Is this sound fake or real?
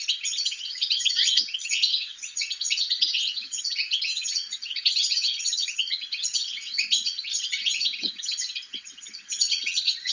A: fake